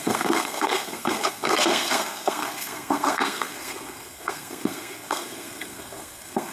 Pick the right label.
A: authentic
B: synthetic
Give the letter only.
B